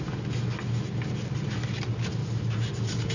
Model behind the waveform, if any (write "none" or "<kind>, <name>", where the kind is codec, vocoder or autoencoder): none